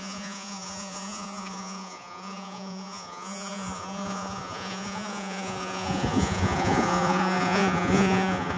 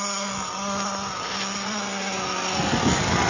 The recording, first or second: second